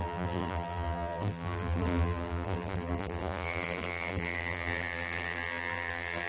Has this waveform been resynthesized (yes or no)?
yes